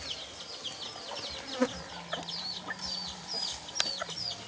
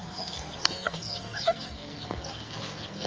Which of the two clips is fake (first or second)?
second